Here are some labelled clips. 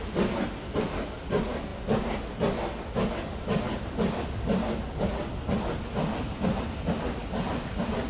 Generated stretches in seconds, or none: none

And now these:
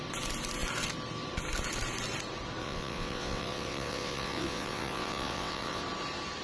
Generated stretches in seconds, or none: 2.6-5.8 (vocoder, WaveNeXt)

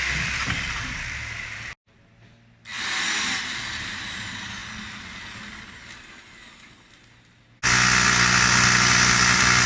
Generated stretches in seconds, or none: none

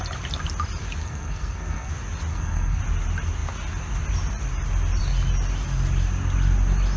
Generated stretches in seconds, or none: 1.0-1.9 (codec, SNAC); 2.3-2.8

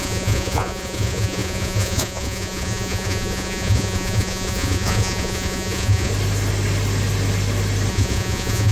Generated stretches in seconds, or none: 0.0-6.1 (vocoder, Vocos); 7.9-8.7

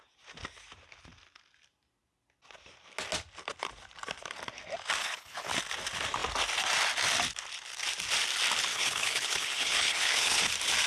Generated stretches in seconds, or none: 5.0-5.5 (codec, HILCodec); 8.7-10.5